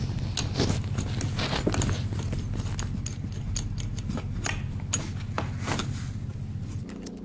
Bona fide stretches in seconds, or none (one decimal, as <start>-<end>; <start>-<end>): 0.0-7.2